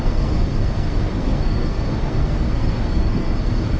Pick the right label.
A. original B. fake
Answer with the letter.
B